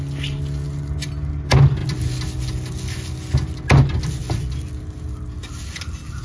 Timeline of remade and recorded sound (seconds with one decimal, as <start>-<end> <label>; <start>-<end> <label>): 0.0-6.2 recorded